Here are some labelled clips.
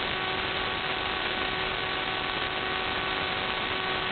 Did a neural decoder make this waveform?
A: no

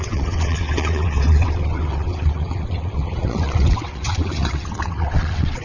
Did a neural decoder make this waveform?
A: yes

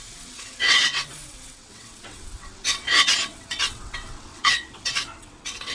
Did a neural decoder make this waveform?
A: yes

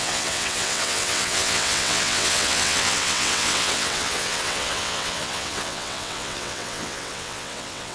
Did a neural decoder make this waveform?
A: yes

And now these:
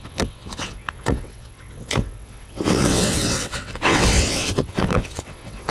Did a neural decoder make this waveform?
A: yes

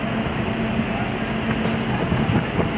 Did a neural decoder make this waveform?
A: no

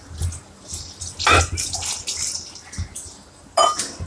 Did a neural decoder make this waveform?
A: no